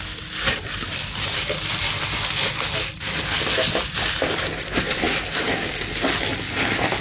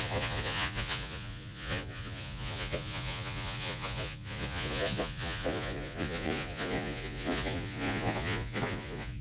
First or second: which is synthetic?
second